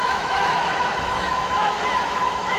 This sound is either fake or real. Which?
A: fake